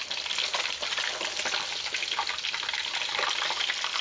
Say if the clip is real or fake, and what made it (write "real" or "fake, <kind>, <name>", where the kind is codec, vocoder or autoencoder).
real